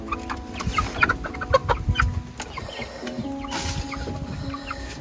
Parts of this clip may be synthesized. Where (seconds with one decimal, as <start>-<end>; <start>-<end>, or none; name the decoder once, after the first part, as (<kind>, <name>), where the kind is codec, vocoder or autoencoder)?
none